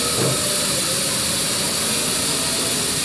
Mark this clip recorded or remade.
recorded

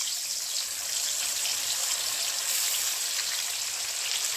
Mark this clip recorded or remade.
recorded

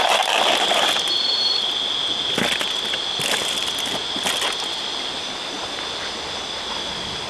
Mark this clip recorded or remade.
recorded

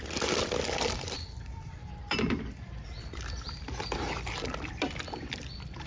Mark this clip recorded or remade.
remade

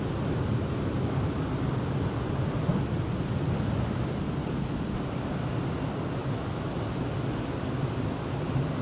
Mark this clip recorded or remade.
recorded